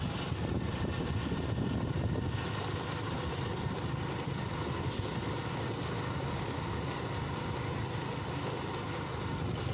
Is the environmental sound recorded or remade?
recorded